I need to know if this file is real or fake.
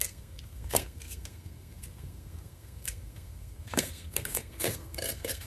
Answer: fake